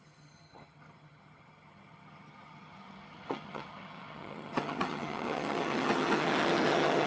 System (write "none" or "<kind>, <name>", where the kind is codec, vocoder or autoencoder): vocoder, HiFi-GAN